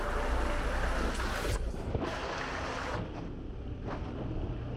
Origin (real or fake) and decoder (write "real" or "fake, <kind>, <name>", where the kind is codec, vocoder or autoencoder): real